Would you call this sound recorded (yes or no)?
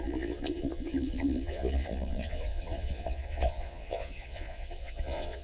no